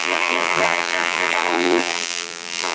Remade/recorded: remade